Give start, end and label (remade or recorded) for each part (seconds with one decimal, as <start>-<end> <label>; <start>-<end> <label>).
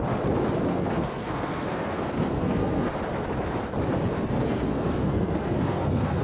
0.0-0.7 recorded; 0.7-2.9 remade; 2.9-4.1 recorded; 4.1-6.2 remade